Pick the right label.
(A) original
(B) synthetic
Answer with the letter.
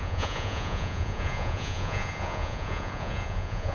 B